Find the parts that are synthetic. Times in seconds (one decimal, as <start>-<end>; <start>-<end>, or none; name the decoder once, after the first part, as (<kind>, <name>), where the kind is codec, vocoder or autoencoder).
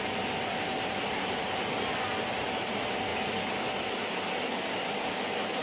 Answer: 0.5-2.7 (vocoder, BigVGAN v2)